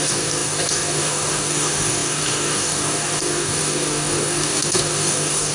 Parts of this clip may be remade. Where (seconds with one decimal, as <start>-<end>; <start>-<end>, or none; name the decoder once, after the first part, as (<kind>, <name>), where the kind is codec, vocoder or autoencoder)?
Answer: 0.0-5.5 (codec, DAC)